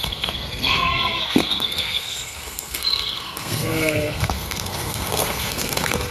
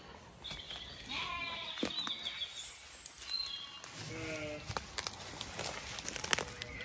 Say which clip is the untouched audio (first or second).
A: second